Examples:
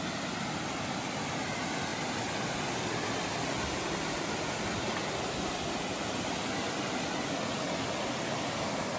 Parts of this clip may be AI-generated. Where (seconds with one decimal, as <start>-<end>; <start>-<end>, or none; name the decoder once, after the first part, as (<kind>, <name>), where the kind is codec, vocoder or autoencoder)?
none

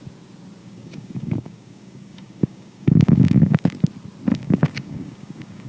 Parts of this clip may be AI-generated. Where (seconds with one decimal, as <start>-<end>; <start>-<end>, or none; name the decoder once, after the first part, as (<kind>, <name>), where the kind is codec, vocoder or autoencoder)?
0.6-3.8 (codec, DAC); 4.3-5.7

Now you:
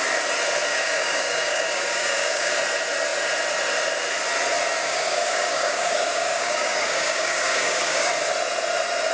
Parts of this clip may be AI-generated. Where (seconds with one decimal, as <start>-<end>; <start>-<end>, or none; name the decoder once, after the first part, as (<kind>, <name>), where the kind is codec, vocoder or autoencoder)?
0.7-2.5 (codec, DAC); 4.8-8.1

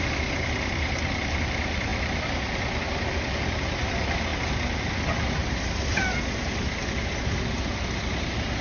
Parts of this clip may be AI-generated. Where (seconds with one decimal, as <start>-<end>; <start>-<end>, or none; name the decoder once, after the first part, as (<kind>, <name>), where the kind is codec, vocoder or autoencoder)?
none